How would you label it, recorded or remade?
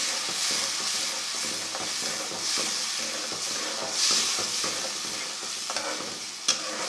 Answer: recorded